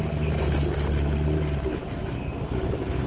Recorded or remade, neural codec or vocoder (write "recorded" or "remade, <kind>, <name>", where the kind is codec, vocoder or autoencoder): recorded